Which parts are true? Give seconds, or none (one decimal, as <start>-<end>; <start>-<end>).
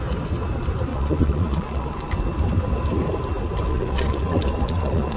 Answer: 0.0-0.9; 2.1-3.7